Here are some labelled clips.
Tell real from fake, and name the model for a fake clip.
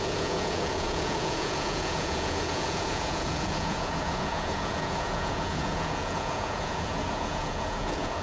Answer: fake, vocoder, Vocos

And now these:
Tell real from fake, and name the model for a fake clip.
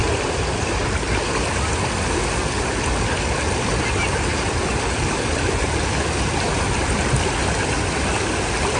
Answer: real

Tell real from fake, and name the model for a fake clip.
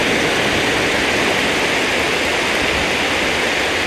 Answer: real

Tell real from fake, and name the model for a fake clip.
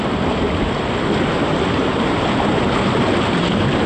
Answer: real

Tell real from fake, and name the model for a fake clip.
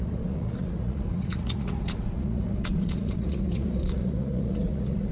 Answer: fake, vocoder, Vocos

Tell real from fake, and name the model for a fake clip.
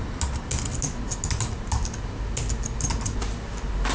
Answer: real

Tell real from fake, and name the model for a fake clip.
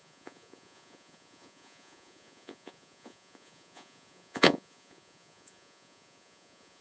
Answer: fake, vocoder, Vocos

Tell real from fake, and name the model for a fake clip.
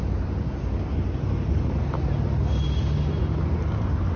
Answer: real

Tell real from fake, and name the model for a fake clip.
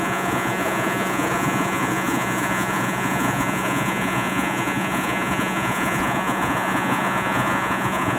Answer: fake, vocoder, Vocos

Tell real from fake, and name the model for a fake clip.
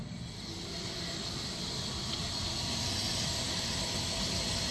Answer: real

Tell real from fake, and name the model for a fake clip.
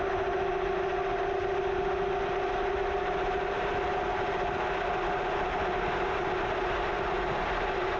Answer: real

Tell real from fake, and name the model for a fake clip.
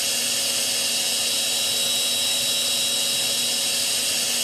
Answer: real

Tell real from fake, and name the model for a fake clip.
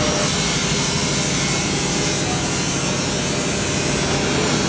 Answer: real